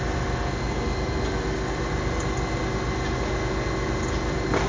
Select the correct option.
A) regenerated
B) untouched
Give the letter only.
B